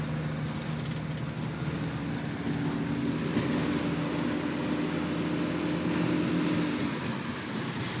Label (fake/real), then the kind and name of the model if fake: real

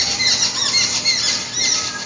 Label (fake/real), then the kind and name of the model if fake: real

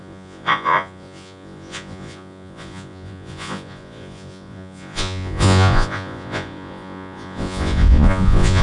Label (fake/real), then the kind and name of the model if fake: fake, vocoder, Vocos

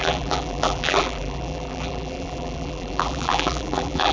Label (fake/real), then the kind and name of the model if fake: fake, vocoder, BigVGAN v2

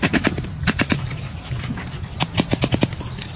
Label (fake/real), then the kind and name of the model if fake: real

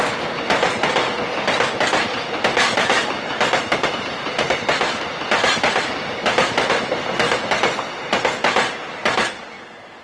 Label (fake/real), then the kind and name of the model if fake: real